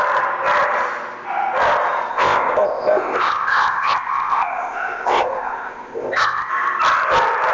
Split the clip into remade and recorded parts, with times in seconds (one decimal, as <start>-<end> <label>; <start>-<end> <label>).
0.0-2.1 recorded; 2.1-6.5 remade; 6.5-7.5 recorded